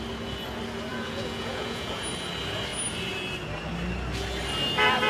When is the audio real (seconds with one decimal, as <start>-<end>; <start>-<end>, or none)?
0.0-0.9; 1.9-5.1